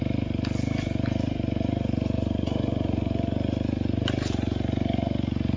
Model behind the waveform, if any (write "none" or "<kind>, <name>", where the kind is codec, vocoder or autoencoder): none